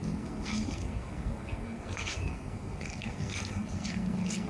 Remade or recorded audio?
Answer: remade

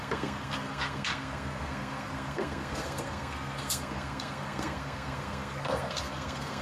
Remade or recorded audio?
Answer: remade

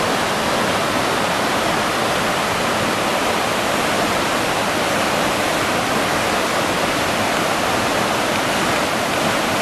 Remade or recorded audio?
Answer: recorded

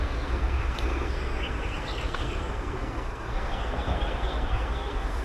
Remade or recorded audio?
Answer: remade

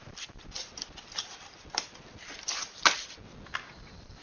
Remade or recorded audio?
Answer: recorded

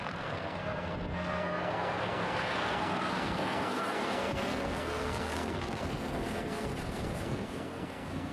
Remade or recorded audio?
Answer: remade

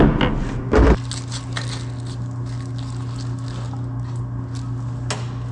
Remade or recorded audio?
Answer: recorded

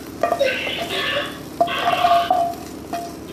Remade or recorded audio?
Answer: recorded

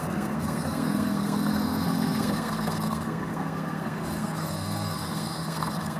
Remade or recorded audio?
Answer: remade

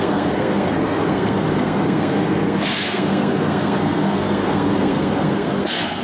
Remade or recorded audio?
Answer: remade